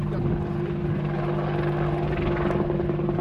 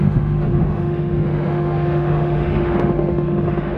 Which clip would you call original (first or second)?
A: first